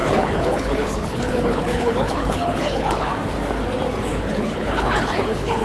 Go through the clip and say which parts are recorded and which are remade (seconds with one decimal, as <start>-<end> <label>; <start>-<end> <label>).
0.0-3.1 remade; 3.1-4.0 recorded; 4.0-5.6 remade